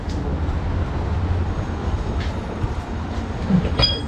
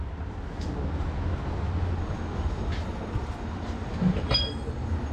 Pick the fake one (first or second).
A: first